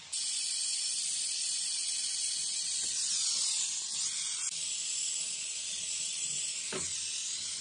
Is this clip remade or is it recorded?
recorded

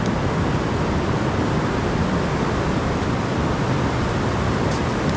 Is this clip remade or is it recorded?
recorded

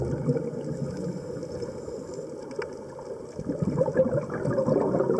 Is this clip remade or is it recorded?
recorded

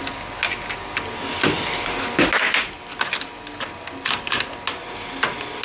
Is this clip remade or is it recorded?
recorded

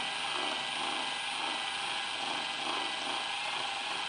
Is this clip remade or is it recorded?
recorded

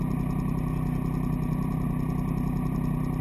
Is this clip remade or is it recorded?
recorded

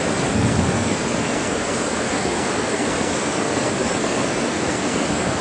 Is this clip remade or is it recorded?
remade